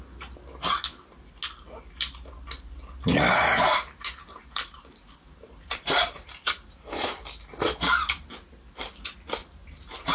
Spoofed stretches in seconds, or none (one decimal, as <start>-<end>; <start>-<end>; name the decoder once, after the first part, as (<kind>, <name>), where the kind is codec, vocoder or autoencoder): 3.1-7.1 (vocoder, BigVGAN v2); 9.4-10.1